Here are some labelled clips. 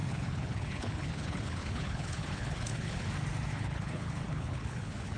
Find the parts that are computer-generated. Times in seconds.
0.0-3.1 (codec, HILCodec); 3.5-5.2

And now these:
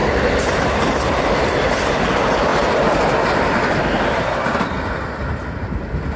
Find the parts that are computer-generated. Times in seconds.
none

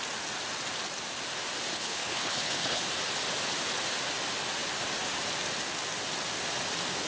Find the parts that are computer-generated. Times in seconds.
1.7-2.8 (codec, HILCodec)

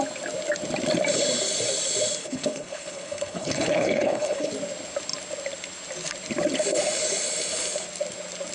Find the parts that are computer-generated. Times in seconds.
2.2-4.5 (codec, HILCodec)